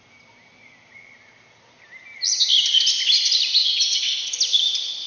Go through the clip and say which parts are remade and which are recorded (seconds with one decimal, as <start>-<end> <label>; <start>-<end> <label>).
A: 0.0-3.6 recorded; 3.6-4.3 remade; 4.3-5.1 recorded